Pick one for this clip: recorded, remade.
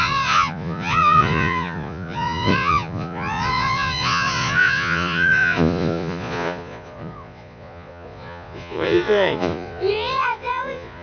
remade